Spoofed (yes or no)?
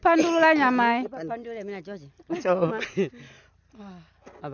no